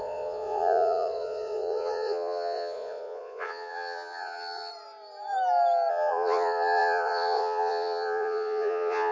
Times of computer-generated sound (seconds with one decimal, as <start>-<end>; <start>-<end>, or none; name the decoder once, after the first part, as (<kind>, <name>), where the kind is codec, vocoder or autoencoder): 0.0-4.7 (vocoder, Vocos); 5.9-9.1